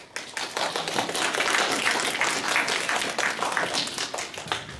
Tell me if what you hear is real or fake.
real